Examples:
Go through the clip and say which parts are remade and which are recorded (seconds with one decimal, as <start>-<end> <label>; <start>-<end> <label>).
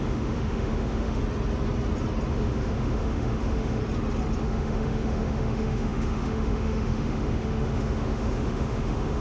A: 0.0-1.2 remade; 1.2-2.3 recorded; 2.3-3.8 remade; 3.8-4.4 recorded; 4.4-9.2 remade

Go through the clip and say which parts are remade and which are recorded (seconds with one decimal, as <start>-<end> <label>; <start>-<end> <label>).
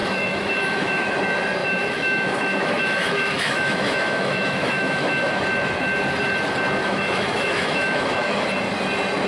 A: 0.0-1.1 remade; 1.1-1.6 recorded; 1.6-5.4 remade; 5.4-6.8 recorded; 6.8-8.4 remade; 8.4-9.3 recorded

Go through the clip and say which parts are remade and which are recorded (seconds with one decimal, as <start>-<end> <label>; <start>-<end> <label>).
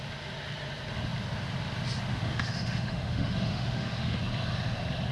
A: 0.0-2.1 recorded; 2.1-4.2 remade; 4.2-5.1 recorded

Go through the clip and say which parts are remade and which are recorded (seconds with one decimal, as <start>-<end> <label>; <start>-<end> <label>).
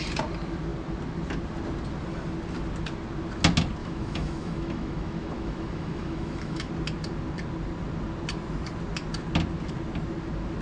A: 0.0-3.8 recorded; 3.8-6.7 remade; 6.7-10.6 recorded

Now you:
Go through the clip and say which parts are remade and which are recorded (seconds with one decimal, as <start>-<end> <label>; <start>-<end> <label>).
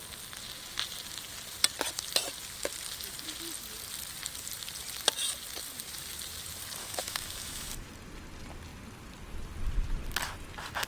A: 0.0-6.8 recorded; 6.8-7.9 remade; 7.9-10.9 recorded